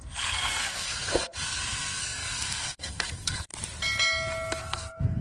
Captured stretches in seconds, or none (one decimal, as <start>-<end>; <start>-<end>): 3.5-4.6